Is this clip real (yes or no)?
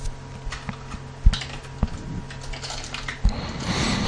yes